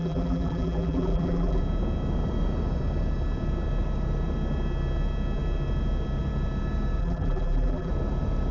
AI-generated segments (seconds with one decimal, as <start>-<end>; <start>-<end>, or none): 0.0-1.6; 7.0-7.9

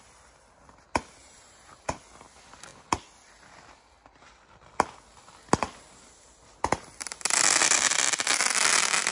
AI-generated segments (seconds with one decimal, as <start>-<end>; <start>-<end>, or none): 1.2-1.9

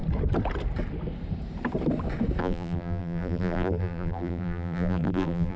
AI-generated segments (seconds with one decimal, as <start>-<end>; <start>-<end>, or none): 2.4-5.6

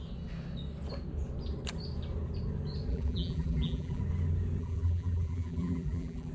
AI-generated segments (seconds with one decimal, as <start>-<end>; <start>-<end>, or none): 2.9-4.0; 4.6-6.3

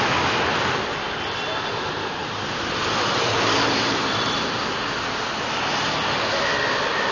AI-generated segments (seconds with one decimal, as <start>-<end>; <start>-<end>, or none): 2.2-4.4

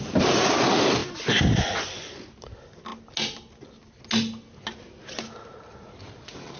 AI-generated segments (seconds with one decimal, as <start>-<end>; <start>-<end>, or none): none

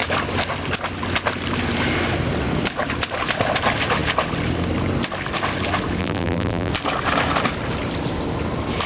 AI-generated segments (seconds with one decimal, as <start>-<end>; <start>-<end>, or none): 6.0-6.7